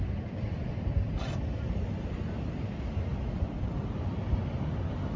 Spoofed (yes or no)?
no